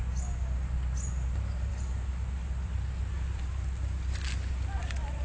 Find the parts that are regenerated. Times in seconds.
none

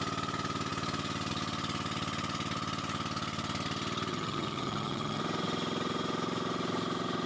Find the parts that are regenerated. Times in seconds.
4.1-5.2 (vocoder, HiFi-GAN)

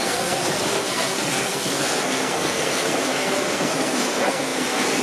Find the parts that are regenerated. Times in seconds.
0.0-5.0 (codec, SNAC)

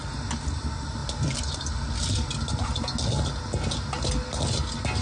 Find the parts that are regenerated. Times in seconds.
none